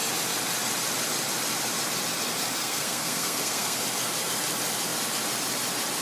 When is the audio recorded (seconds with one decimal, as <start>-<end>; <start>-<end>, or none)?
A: 0.0-2.6; 3.8-6.0